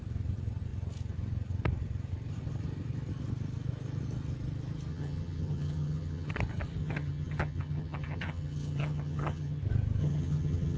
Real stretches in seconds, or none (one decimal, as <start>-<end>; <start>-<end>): 0.0-4.9; 6.3-6.8; 9.6-10.0